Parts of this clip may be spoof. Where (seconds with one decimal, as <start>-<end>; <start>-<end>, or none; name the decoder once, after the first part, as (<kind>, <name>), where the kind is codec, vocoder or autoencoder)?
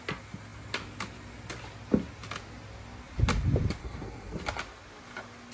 3.8-4.4 (codec, SNAC)